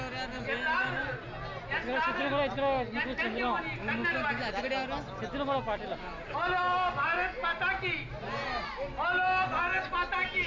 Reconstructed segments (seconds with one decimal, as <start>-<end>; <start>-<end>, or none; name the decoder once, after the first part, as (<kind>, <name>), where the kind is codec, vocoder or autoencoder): none